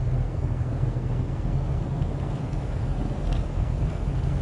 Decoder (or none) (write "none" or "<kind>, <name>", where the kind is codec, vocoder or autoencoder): codec, SNAC